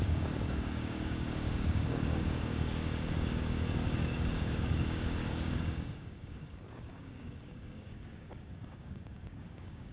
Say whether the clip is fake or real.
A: fake